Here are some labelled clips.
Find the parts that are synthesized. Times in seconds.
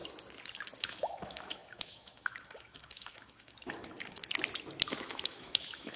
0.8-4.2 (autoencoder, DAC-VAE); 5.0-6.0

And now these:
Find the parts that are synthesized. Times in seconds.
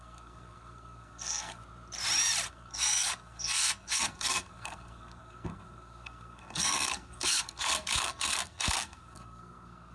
0.0-1.6 (codec, SNAC); 2.5-9.9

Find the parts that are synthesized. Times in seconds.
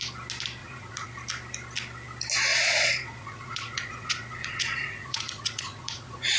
0.6-1.1 (vocoder, Vocos); 2.5-6.4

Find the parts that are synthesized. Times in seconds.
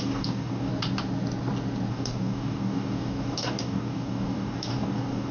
0.0-0.7 (codec, DAC); 1.9-5.3